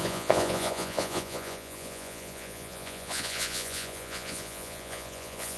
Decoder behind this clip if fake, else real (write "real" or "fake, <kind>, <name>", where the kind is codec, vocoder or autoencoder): fake, vocoder, Vocos